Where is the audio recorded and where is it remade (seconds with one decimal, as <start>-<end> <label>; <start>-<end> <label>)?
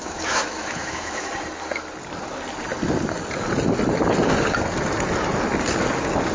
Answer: 0.0-1.3 remade; 1.3-6.3 recorded